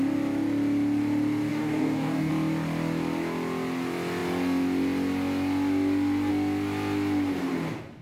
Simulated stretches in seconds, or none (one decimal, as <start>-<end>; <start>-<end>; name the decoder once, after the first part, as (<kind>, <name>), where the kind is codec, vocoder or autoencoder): 1.5-2.3 (codec, DAC)